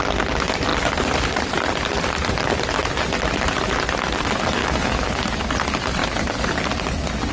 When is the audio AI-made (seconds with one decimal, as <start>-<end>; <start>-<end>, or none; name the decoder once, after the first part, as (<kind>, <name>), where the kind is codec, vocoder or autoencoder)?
4.6-5.2 (autoencoder, DAC-VAE)